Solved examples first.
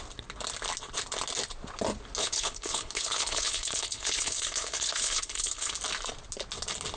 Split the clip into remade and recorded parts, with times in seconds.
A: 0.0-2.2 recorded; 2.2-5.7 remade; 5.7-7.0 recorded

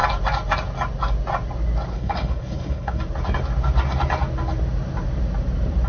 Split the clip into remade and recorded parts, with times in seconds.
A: 0.0-1.9 recorded; 1.9-3.0 remade; 3.0-5.9 recorded

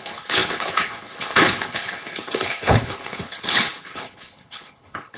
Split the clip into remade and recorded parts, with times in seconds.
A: 0.0-5.2 remade

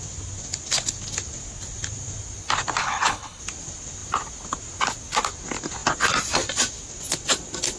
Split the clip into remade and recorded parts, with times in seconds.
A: 0.0-2.8 recorded; 2.8-3.4 remade; 3.4-7.8 recorded